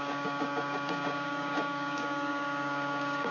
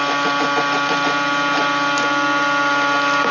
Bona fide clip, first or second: second